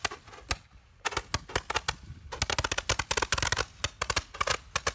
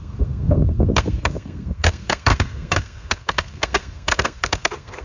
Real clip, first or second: first